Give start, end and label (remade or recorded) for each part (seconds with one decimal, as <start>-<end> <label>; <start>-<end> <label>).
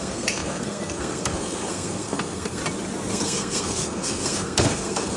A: 0.0-2.6 remade; 2.6-3.1 recorded; 3.1-5.2 remade